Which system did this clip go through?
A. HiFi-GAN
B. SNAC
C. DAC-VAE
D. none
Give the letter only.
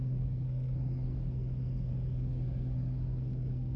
B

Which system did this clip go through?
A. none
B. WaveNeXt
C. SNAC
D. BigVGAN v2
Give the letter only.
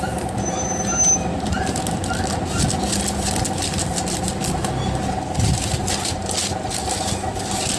A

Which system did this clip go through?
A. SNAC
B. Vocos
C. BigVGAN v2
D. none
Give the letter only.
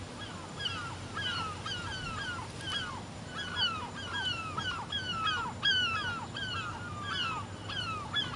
D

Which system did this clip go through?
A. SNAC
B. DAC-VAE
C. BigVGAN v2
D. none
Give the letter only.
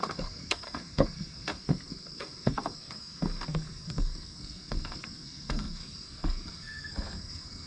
A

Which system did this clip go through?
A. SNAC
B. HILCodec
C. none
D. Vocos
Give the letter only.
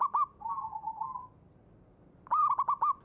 C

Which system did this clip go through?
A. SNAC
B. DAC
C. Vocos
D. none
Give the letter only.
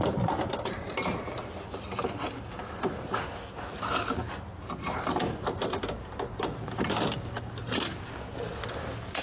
D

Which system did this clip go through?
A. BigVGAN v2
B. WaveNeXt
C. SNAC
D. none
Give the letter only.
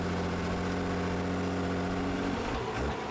D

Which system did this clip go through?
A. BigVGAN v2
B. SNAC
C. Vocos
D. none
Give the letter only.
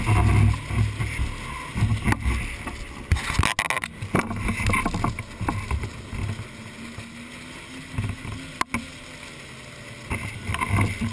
D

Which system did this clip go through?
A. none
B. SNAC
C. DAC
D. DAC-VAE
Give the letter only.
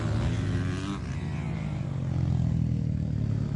A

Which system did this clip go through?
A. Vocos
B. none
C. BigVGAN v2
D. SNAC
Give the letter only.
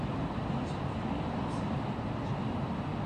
B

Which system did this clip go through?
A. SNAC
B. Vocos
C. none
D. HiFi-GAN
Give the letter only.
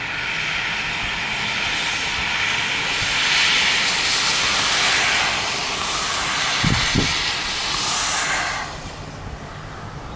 C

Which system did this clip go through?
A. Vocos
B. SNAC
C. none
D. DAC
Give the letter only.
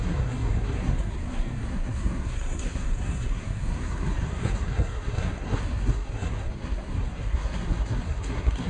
B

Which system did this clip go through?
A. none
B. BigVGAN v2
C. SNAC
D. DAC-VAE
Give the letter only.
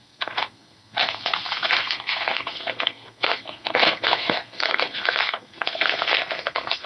C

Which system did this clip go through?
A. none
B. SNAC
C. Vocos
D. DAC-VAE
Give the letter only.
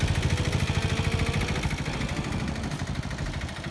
A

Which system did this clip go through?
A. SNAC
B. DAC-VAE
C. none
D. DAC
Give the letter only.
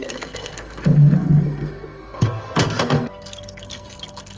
A